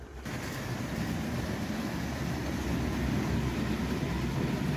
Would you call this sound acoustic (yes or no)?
yes